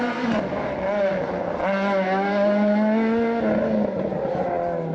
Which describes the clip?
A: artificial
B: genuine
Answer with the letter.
B